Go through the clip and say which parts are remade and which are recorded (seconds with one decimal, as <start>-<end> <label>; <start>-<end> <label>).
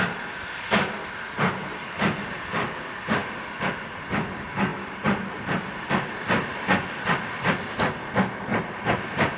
0.0-1.7 recorded; 1.7-2.4 remade; 2.4-4.7 recorded; 4.7-5.9 remade; 5.9-8.5 recorded; 8.5-9.4 remade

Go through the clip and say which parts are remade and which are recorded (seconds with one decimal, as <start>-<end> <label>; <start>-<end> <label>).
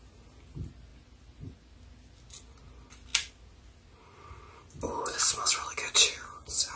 0.0-6.8 recorded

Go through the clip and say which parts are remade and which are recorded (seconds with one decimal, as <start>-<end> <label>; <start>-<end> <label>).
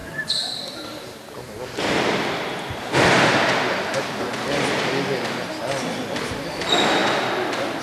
0.0-7.8 recorded